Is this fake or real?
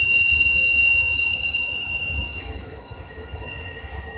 fake